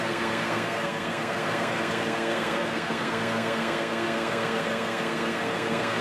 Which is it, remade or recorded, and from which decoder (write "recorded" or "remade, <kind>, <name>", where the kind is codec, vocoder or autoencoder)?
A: remade, codec, SNAC